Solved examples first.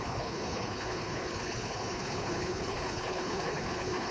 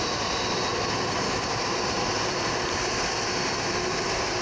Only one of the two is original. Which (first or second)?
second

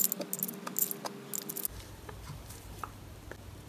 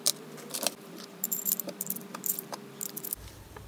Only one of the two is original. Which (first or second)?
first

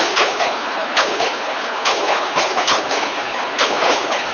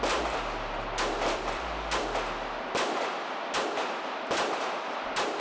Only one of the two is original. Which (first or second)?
second